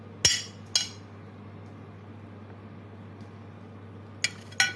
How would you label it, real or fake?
real